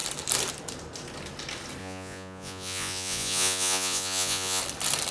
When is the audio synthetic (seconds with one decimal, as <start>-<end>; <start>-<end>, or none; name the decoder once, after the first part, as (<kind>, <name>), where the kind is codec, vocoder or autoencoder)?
1.8-4.6 (vocoder, Vocos)